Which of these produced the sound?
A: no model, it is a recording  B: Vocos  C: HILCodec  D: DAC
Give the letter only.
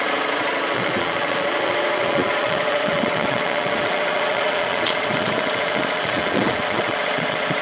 B